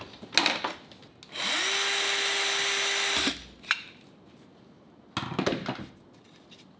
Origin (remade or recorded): recorded